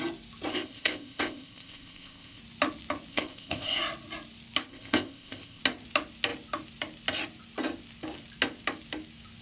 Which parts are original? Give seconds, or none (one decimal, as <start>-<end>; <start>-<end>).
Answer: 0.0-0.5; 2.4-3.1; 3.8-4.7; 5.6-9.4